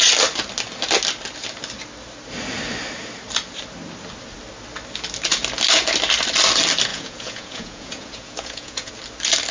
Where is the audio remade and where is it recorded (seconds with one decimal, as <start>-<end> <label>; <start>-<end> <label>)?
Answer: 0.0-6.9 recorded; 6.9-8.9 remade; 8.9-9.5 recorded